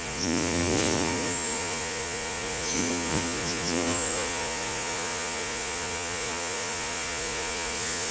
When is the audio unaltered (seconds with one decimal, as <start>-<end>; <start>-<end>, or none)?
none